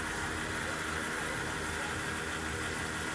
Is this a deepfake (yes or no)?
no